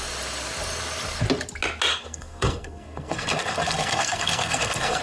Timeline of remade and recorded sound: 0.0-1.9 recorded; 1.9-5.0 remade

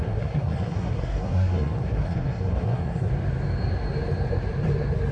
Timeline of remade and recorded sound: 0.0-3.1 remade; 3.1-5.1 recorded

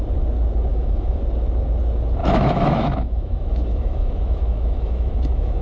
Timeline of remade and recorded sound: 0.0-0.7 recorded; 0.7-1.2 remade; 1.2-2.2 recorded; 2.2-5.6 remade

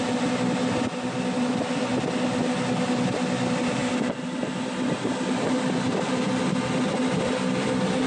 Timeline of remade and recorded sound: 0.0-8.1 recorded

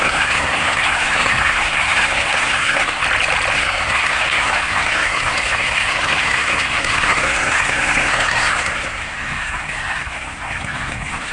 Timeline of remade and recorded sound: 0.0-3.0 remade; 3.0-3.5 recorded; 3.5-11.3 remade